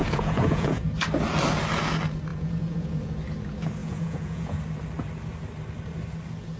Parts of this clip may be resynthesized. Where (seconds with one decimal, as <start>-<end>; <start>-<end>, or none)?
0.0-0.9; 2.3-3.1; 3.8-4.6